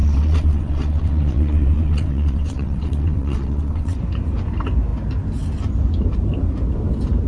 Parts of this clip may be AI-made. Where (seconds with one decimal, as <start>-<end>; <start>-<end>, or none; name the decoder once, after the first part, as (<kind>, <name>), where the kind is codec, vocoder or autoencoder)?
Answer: 0.0-4.0 (vocoder, WaveNeXt)